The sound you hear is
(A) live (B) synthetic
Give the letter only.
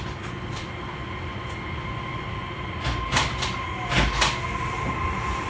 A